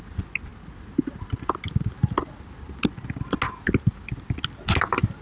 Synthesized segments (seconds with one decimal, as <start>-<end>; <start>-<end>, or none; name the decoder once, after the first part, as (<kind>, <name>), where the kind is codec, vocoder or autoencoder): 0.5-1.6 (vocoder, BigVGAN v2)